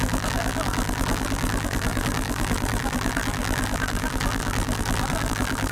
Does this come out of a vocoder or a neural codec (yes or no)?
yes